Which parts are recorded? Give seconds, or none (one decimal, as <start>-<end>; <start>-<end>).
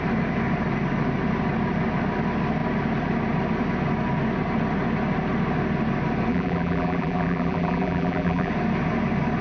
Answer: 0.0-6.3; 8.5-9.4